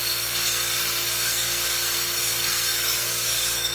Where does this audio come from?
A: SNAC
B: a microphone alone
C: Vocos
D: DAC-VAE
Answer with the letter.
A